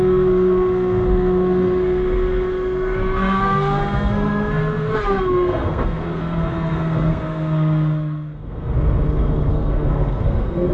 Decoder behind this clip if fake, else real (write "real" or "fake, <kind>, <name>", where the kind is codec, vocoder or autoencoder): fake, codec, SNAC